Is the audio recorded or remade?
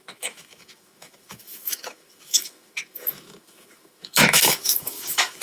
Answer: remade